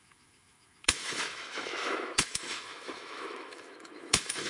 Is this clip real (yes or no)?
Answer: no